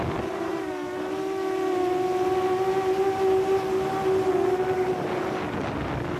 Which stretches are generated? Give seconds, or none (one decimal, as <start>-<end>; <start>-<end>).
none